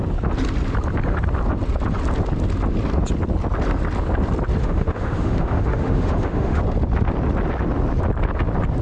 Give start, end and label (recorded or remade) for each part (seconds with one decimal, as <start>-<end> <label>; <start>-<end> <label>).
0.0-4.6 recorded; 4.6-6.6 remade; 6.6-8.8 recorded